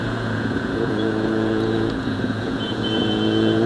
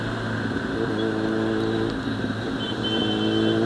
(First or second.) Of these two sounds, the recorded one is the second